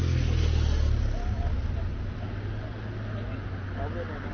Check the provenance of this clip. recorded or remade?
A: recorded